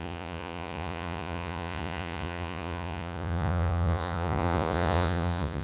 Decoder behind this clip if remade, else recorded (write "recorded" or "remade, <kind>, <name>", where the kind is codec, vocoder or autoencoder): remade, vocoder, Vocos